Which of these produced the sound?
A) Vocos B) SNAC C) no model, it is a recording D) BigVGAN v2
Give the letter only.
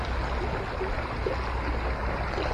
C